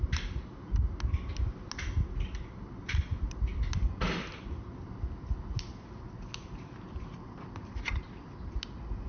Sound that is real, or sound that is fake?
real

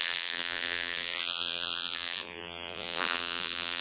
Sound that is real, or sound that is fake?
fake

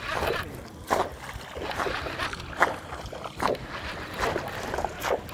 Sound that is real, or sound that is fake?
real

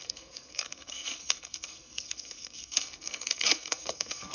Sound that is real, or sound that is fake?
fake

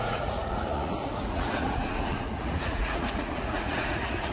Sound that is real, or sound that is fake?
fake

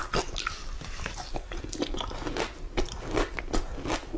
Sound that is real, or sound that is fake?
real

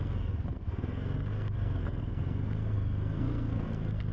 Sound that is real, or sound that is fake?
fake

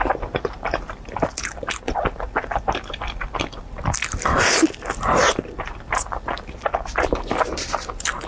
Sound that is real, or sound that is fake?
fake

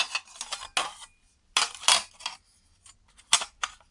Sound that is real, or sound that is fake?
real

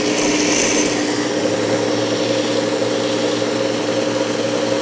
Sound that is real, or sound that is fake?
real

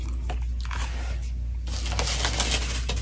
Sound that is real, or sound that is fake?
real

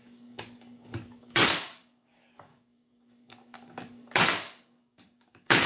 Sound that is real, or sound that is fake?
fake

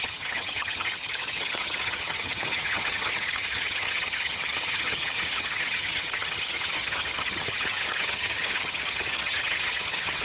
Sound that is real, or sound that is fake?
fake